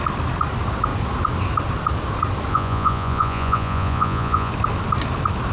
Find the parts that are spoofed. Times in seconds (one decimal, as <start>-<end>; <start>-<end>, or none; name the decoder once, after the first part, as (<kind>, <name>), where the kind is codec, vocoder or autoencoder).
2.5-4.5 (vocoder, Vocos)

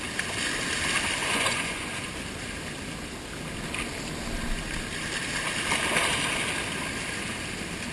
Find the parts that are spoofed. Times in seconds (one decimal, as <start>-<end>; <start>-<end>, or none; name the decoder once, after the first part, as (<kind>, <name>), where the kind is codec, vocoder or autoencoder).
1.2-2.1 (vocoder, Vocos)

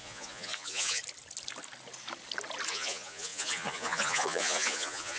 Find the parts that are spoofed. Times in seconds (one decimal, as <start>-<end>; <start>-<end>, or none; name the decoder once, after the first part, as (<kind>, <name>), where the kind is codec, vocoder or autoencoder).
0.0-1.0 (vocoder, Vocos); 2.7-5.2

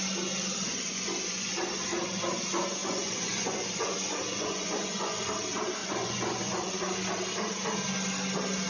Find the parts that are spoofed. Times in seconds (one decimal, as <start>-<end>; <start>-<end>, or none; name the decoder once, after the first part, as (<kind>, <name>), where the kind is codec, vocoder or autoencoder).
0.7-1.5 (vocoder, Vocos); 2.8-5.3; 5.8-6.9